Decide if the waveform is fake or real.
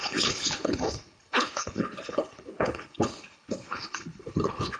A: fake